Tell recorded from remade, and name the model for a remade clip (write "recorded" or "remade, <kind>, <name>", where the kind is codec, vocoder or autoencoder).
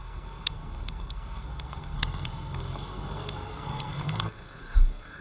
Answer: remade, codec, SNAC